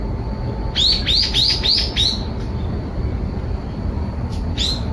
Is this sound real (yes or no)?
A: yes